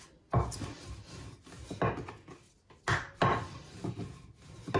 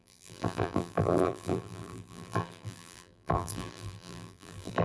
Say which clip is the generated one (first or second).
second